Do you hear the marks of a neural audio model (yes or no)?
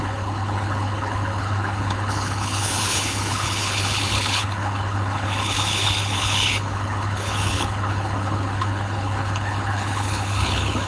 yes